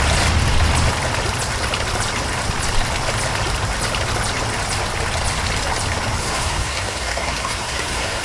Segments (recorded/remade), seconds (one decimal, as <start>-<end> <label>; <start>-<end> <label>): 0.0-6.2 recorded; 6.2-8.2 remade